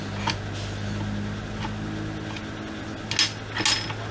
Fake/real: real